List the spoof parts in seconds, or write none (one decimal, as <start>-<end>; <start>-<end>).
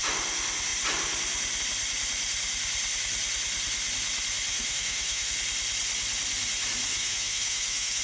4.5-5.3; 6.9-8.0